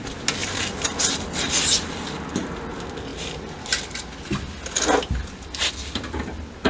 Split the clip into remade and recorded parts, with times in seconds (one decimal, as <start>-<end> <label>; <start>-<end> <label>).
0.0-0.4 recorded; 0.4-1.0 remade; 1.0-3.1 recorded; 3.1-3.7 remade; 3.7-6.7 recorded